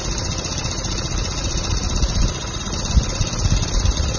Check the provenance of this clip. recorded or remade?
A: recorded